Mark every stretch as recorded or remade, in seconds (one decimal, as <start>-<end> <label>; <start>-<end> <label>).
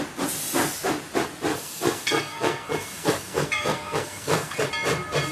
0.0-1.5 recorded; 1.5-4.7 remade; 4.7-5.3 recorded